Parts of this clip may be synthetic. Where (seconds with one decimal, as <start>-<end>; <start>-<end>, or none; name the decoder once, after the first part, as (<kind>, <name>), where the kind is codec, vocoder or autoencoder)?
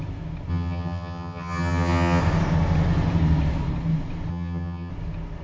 0.5-2.2 (vocoder, HiFi-GAN); 4.3-4.9